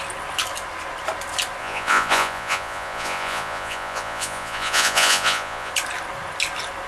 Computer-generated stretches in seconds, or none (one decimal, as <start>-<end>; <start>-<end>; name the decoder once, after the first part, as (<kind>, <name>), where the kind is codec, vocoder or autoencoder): 1.6-5.7 (vocoder, Vocos)